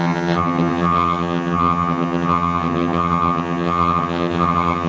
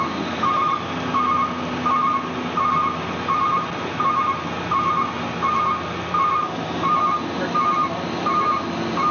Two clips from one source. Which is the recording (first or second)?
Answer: second